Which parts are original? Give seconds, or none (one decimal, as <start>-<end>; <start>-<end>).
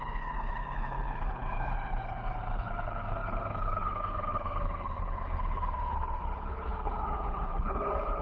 none